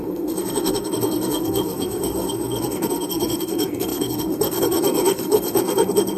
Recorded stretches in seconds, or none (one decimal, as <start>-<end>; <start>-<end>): none